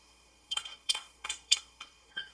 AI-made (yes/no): yes